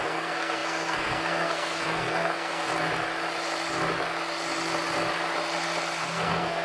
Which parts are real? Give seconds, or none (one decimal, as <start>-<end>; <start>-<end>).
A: 2.7-6.0